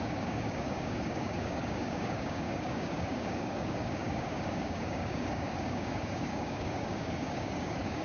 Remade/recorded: remade